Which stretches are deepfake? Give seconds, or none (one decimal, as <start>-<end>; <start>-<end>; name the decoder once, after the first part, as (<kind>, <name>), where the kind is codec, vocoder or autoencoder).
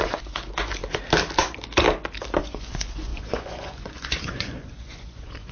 0.0-0.8 (vocoder, Vocos); 2.4-5.5